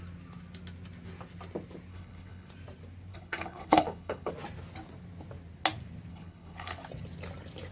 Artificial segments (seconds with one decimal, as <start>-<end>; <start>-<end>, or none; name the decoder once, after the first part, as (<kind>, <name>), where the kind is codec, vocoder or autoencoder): 1.9-2.5 (codec, HILCodec); 3.1-4.3; 6.1-6.8